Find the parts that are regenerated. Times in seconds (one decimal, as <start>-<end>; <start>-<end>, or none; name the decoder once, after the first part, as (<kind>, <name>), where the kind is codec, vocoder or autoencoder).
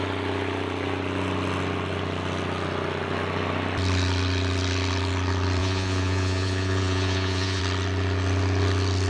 5.6-7.6 (vocoder, Vocos)